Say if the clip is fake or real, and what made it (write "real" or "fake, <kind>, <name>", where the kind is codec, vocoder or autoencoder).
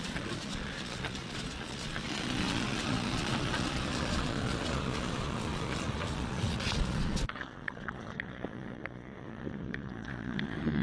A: fake, vocoder, Vocos